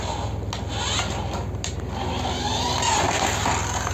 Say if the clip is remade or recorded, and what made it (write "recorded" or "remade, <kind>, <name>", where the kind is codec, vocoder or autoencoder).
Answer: recorded